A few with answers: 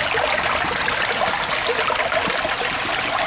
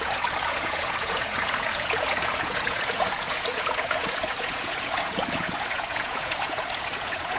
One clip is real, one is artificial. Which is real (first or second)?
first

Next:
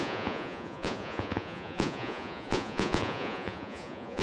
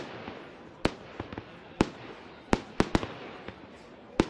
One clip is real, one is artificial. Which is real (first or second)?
second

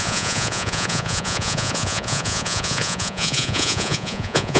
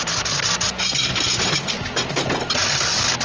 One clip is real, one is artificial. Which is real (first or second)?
second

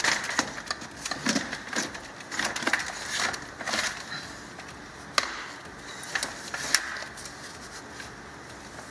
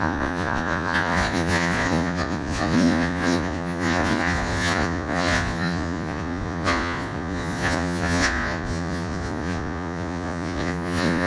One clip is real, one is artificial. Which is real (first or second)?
first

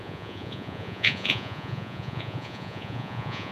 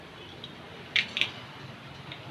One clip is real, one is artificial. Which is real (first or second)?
second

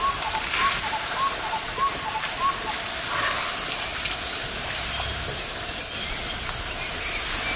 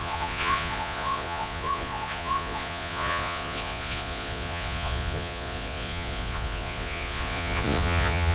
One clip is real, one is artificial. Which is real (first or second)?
first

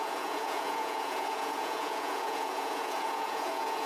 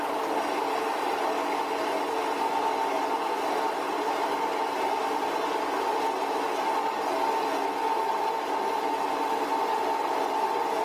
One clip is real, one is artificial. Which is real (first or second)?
second